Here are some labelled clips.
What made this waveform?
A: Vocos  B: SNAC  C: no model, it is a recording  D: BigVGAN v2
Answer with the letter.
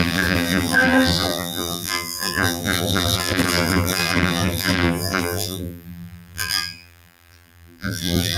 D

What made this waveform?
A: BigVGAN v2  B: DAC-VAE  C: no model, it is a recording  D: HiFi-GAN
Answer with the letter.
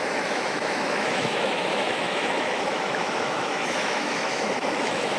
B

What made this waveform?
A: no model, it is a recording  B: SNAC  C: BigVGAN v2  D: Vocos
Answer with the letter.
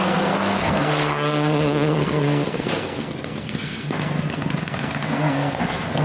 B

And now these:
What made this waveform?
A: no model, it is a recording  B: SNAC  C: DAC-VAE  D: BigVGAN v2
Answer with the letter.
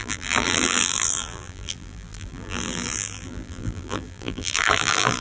D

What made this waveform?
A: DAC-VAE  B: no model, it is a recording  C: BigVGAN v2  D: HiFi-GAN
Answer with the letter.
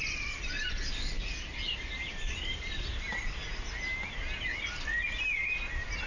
B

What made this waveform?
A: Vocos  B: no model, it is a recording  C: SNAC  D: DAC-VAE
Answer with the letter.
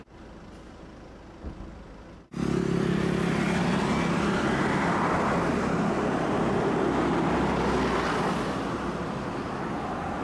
B